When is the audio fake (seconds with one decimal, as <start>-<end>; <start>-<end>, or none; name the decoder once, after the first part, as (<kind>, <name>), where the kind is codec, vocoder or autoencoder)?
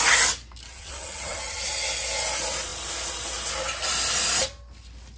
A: 0.7-1.7 (vocoder, WaveNeXt)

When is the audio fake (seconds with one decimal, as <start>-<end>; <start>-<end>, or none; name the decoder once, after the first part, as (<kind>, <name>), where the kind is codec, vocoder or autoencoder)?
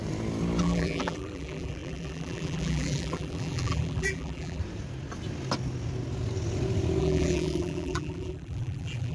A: 0.6-4.6 (vocoder, BigVGAN v2); 7.0-9.1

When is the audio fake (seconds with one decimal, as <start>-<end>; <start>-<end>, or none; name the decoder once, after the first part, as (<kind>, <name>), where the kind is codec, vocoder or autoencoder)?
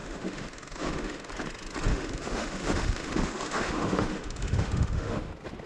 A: 0.0-1.3 (autoencoder, DAC-VAE); 1.9-5.3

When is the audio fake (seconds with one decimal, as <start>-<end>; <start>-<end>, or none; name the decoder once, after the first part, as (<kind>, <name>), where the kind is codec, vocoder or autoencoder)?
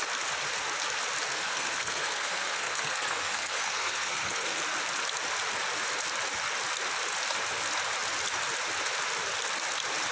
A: 1.3-4.6 (codec, SNAC)